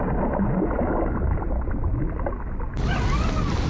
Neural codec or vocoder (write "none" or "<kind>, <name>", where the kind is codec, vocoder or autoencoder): none